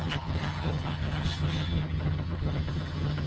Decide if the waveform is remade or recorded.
remade